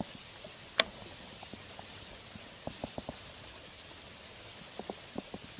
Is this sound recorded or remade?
remade